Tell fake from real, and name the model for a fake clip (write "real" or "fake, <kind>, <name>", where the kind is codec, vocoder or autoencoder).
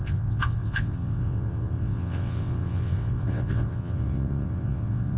fake, vocoder, WaveNeXt